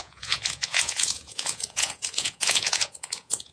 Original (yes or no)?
no